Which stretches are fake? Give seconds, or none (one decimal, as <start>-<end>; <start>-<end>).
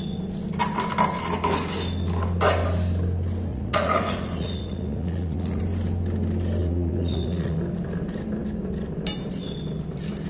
3.5-5.6; 6.6-7.6